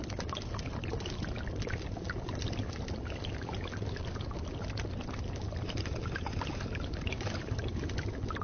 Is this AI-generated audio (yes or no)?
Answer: no